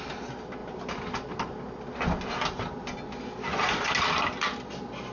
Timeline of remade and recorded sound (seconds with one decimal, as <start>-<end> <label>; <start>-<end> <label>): 0.0-5.1 recorded